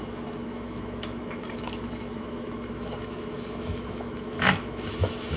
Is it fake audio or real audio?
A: fake